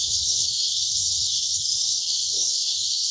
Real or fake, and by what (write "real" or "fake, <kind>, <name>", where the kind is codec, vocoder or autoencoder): fake, codec, SNAC